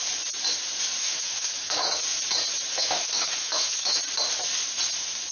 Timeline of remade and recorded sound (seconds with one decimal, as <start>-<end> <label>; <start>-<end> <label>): 0.0-1.0 recorded; 1.0-1.9 remade; 1.9-2.7 recorded; 2.7-4.0 remade; 4.0-5.3 recorded

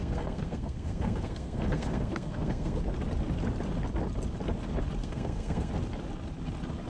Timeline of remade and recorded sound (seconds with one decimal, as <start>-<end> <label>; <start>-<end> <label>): 0.0-2.8 remade; 2.8-5.0 recorded; 5.0-5.7 remade; 5.7-6.9 recorded

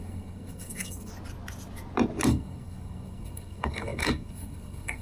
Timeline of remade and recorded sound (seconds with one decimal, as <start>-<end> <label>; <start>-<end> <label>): 0.0-1.1 remade; 1.1-2.3 recorded; 2.3-5.0 remade